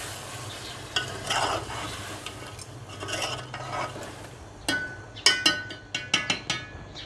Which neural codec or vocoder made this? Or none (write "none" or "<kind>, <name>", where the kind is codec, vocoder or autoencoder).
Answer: none